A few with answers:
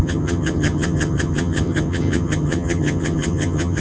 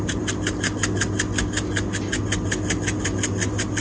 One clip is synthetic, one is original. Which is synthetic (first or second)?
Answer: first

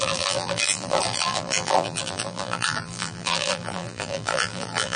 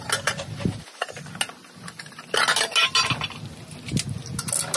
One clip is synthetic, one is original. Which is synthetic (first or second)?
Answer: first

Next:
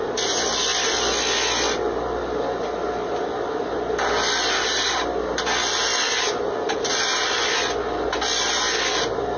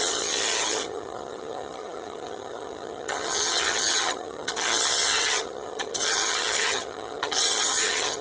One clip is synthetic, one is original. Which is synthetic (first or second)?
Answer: second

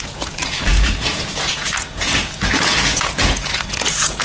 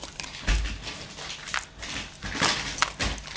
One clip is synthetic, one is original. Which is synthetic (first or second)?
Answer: first